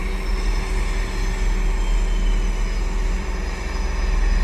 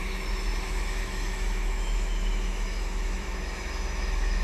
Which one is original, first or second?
first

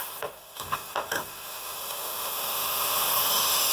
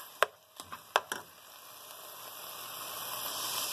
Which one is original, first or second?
second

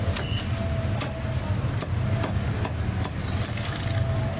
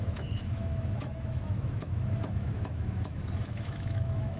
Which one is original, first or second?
first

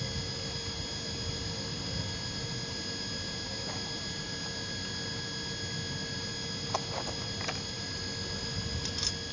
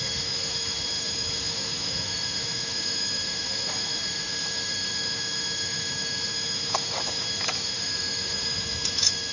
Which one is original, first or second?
first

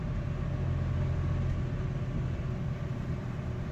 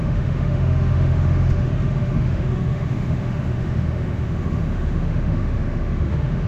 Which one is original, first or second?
first